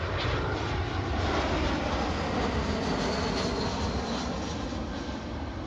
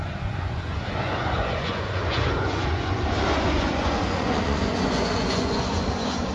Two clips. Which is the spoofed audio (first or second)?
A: second